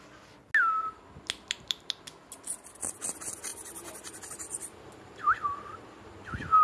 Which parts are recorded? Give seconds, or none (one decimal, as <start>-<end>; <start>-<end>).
0.0-6.6